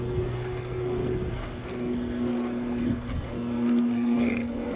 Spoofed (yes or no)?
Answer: yes